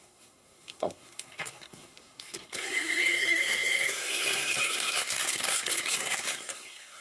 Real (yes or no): no